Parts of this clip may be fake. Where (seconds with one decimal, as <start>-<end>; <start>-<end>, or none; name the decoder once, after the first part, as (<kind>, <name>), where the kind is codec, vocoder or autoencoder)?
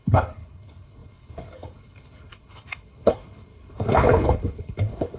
0.0-5.2 (codec, HILCodec)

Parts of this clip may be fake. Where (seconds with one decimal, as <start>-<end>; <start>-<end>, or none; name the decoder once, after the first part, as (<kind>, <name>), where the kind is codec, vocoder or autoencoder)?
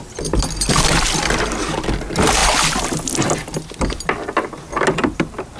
none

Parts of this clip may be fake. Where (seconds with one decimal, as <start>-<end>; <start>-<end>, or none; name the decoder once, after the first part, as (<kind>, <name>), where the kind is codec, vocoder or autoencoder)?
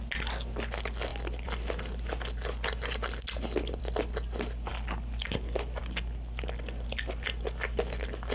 none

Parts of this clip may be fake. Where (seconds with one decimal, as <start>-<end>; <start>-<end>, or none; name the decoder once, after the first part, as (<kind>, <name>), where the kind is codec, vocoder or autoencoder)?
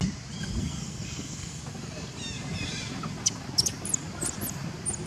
0.6-1.6 (codec, SNAC)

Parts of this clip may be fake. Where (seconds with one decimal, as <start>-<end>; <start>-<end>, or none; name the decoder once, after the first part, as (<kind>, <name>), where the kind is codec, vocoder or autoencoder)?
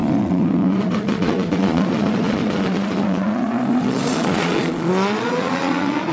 0.0-6.1 (vocoder, Vocos)